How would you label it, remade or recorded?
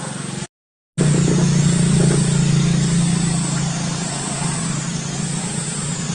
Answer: recorded